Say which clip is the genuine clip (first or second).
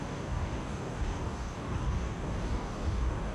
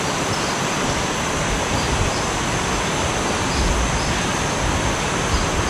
second